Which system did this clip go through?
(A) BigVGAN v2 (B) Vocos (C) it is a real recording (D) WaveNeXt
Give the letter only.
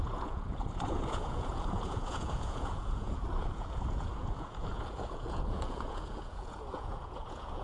B